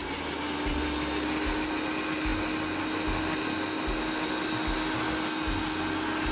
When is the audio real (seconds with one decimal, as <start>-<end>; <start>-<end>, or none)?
0.0-6.3